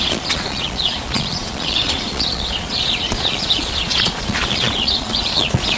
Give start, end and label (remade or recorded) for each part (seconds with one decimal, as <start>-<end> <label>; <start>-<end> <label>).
0.0-5.8 remade